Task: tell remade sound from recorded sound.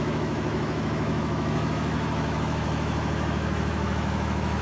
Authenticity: remade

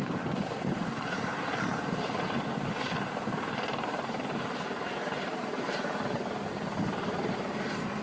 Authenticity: remade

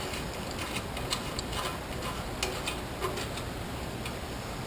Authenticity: recorded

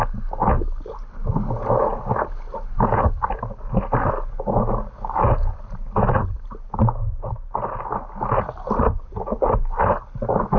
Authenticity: recorded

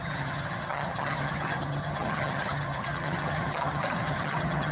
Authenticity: remade